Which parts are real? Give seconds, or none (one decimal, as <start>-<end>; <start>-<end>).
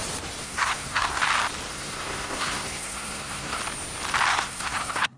0.0-0.4; 1.2-1.7; 3.6-4.3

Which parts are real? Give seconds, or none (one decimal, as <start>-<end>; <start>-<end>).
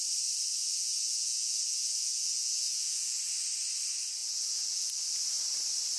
0.0-0.6; 3.2-4.2; 4.9-6.0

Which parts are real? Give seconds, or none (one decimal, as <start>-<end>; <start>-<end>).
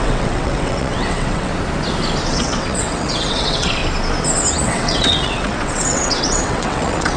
1.5-2.3; 3.8-4.6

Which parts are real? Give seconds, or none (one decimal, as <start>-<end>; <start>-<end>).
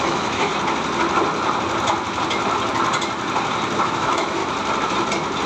0.5-3.8; 4.4-5.5